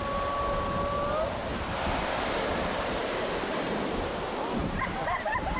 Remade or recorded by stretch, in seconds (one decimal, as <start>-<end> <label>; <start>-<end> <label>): 0.0-1.5 recorded; 1.5-2.1 remade; 2.1-3.0 recorded; 3.0-3.9 remade; 3.9-4.6 recorded; 4.6-5.6 remade